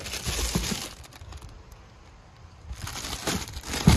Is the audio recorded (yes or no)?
yes